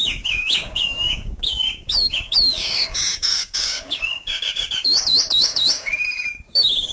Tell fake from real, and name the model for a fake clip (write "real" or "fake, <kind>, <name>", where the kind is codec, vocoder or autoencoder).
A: fake, codec, DAC